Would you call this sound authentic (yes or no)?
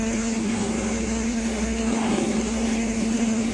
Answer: no